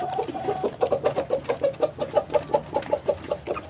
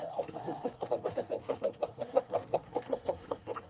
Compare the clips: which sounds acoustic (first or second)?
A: first